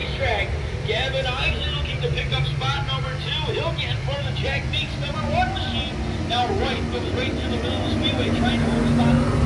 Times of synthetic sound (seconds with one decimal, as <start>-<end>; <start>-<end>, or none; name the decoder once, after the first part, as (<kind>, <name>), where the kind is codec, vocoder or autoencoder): none